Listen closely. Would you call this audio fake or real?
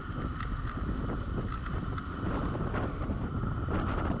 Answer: real